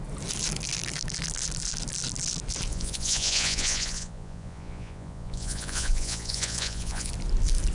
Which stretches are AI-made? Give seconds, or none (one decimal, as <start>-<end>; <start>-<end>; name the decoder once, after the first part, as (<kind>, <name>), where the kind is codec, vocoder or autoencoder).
2.7-7.1 (vocoder, Vocos)